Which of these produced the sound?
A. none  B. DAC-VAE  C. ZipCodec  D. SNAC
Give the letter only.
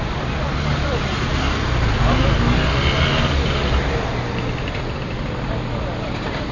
A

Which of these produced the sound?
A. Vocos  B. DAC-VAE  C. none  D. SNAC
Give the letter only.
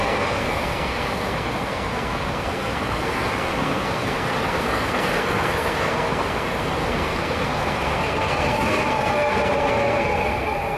D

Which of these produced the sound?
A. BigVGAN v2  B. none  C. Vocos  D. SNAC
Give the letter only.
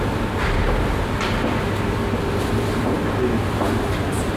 B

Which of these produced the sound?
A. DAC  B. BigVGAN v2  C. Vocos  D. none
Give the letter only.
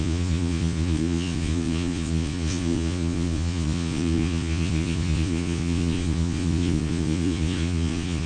C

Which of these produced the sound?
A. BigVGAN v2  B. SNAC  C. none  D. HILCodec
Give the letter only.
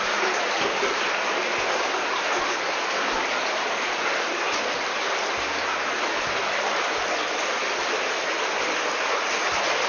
C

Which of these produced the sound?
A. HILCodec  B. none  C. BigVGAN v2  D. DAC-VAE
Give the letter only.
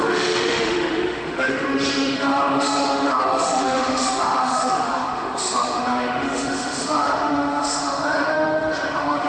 D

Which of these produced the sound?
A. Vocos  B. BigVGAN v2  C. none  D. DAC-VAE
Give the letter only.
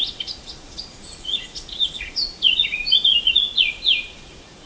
A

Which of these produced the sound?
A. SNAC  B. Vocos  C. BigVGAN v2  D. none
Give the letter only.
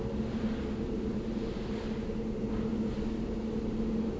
D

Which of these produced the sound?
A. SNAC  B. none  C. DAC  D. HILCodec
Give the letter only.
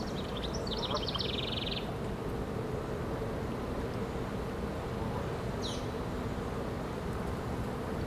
B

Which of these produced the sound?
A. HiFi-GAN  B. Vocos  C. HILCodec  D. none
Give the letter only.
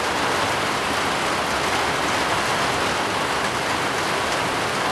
D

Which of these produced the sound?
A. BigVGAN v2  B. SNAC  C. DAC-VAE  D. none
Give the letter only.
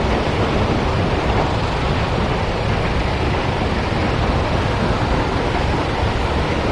D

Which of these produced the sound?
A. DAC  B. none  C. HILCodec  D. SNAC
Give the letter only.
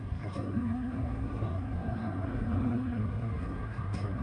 D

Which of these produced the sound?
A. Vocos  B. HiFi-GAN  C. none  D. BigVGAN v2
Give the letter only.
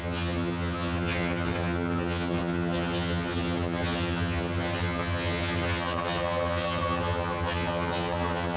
B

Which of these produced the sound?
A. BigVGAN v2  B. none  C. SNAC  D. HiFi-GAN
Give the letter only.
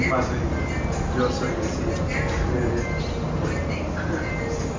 B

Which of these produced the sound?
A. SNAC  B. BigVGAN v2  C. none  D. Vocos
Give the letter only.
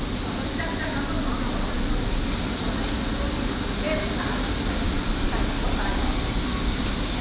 C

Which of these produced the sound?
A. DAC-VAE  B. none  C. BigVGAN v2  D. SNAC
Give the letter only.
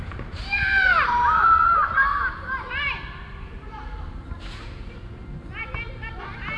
C